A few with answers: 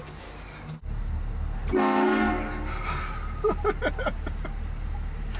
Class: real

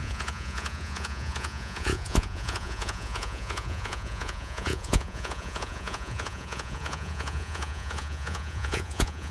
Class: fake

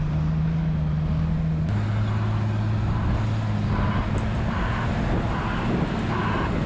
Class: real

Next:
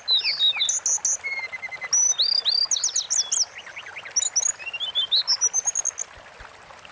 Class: real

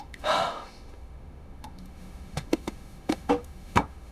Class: fake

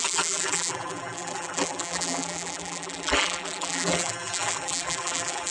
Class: fake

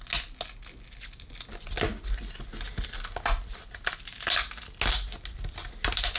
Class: real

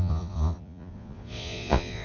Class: fake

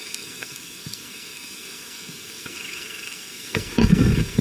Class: fake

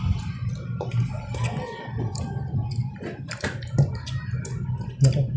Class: real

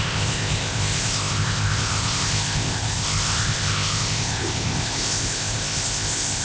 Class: fake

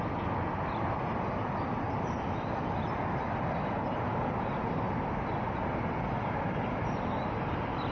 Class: real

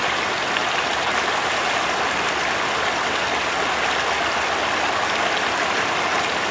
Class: real